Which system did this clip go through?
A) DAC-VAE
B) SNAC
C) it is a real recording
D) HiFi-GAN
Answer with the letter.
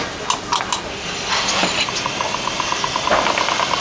C